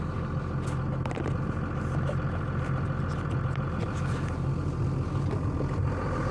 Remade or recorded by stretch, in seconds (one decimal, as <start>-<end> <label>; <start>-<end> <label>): 0.0-4.6 recorded; 4.6-6.3 remade